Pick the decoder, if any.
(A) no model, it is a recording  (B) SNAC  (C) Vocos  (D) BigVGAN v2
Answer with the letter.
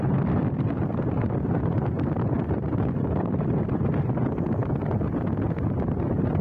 A